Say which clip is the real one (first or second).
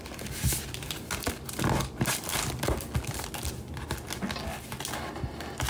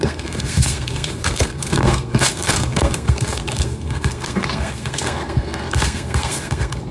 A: first